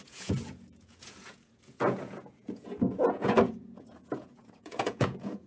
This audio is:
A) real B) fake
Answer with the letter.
B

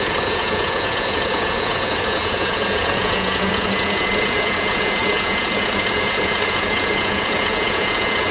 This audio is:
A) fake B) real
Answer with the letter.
A